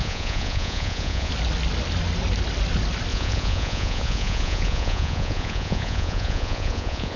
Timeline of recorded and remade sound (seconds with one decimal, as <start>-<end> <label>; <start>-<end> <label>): 0.0-1.3 remade; 1.3-3.1 recorded; 3.1-7.2 remade